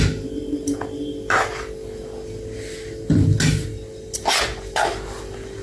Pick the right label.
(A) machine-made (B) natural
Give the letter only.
B